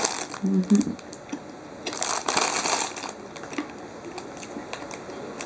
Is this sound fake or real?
real